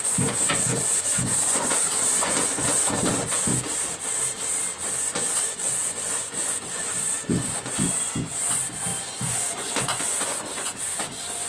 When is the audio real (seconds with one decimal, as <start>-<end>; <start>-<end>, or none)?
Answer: 3.5-4.9